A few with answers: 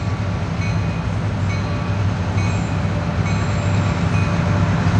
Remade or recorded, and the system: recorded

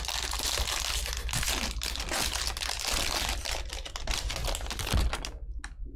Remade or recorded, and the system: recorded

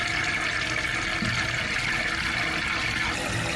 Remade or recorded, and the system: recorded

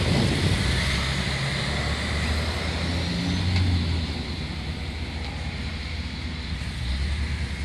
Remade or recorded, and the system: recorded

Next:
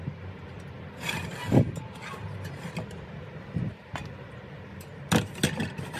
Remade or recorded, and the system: recorded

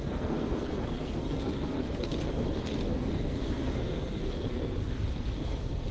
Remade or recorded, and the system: remade, codec, SNAC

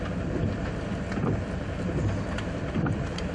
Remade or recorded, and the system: recorded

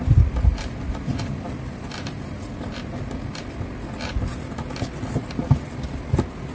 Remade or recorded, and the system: recorded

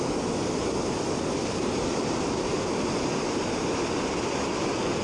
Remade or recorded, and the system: recorded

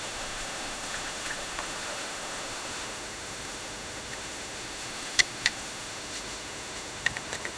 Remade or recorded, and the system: remade, autoencoder, DAC-VAE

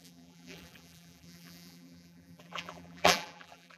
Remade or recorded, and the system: remade, vocoder, BigVGAN v2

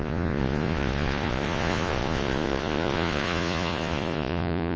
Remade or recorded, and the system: remade, vocoder, Vocos